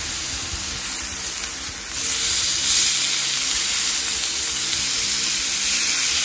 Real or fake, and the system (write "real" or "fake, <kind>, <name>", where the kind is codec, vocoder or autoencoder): real